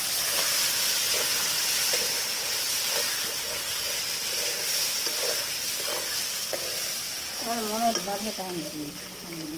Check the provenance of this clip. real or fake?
real